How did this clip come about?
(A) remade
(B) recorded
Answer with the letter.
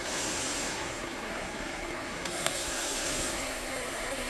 A